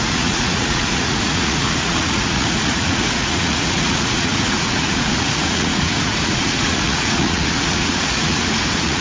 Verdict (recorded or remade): remade